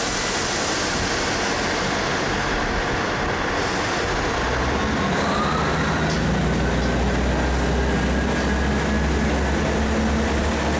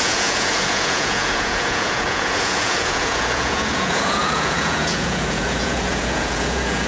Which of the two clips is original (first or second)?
first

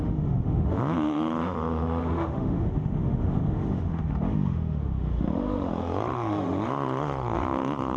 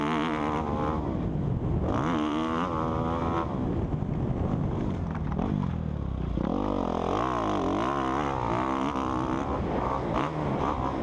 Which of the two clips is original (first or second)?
second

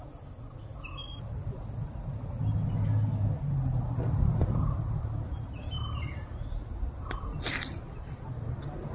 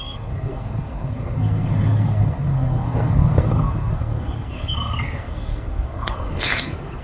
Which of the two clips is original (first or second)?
first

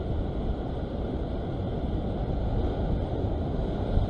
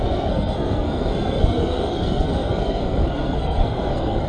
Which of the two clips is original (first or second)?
first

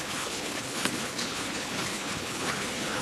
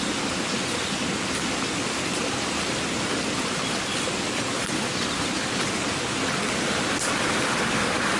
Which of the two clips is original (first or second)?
second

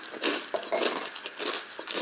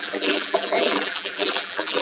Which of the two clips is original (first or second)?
first